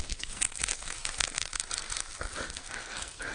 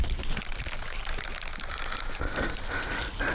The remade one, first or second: first